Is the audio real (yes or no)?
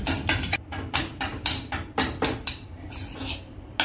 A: yes